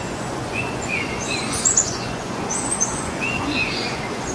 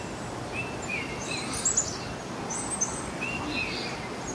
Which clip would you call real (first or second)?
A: second